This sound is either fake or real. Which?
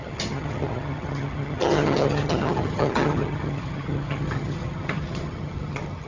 fake